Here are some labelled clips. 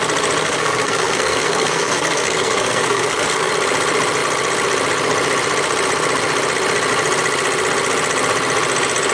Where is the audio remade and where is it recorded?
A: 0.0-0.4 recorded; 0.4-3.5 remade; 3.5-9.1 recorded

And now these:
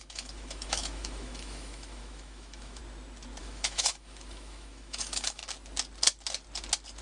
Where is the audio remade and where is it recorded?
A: 0.0-2.8 remade; 2.8-3.4 recorded; 3.4-5.4 remade; 5.4-7.0 recorded

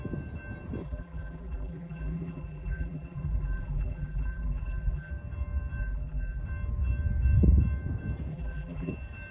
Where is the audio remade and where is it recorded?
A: 0.0-0.8 recorded; 0.8-5.1 remade; 5.1-5.8 recorded; 5.8-6.4 remade; 6.4-8.3 recorded; 8.3-8.9 remade; 8.9-9.3 recorded

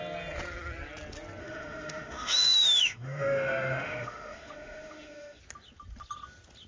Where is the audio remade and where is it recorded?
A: 0.0-1.4 recorded; 1.4-5.4 remade; 5.4-6.7 recorded